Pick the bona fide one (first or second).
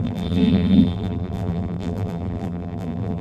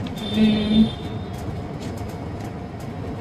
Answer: second